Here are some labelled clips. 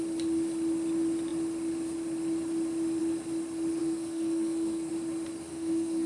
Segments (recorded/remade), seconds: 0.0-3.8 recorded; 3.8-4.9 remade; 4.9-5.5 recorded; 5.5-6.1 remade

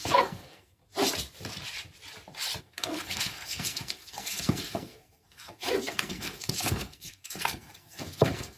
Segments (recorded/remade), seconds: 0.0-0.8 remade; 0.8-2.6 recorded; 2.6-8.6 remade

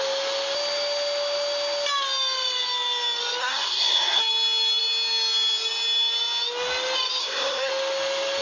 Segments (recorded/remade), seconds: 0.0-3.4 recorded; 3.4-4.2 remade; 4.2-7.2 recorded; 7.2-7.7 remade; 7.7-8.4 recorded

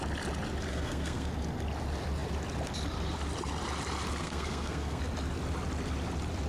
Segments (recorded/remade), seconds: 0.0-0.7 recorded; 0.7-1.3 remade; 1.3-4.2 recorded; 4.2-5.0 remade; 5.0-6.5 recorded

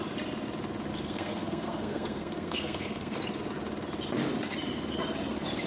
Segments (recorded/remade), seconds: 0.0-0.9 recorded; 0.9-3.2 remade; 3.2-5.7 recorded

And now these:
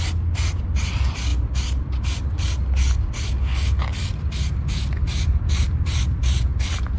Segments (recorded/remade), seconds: 0.0-7.0 recorded